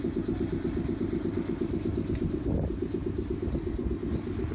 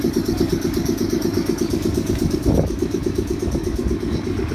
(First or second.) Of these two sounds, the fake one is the second